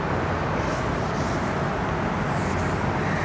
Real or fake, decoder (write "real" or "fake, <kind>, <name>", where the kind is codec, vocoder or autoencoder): real